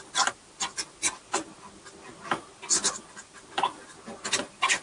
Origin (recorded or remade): recorded